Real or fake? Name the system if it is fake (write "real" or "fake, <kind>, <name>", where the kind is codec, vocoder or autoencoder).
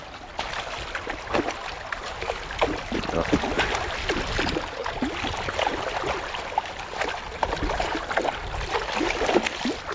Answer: real